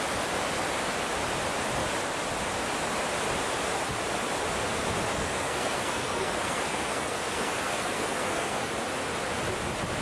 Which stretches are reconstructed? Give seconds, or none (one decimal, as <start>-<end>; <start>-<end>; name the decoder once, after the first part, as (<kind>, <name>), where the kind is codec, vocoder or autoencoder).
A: 5.1-8.7 (codec, SNAC)